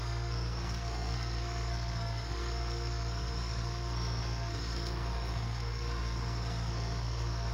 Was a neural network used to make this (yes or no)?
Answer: yes